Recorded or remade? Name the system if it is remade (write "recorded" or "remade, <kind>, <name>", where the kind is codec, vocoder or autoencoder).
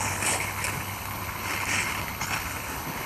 remade, codec, HILCodec